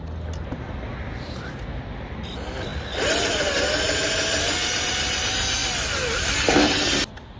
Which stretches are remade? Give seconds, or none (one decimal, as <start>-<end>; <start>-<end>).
2.7-4.9